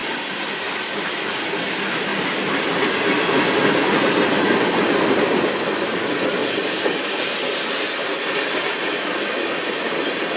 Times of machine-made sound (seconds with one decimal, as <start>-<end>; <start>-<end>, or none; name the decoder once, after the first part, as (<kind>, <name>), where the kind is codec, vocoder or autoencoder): none